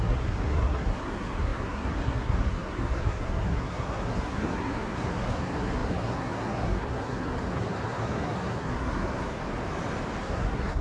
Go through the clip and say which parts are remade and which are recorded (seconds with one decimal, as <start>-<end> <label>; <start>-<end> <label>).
0.0-9.4 remade; 9.4-10.2 recorded; 10.2-10.8 remade